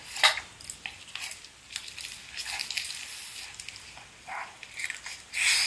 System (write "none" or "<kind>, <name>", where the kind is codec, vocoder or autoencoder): none